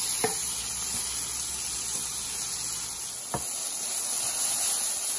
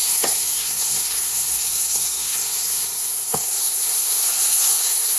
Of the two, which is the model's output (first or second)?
second